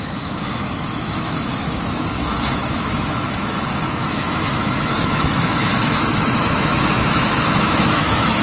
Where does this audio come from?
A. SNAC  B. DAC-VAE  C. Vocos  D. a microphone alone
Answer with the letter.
B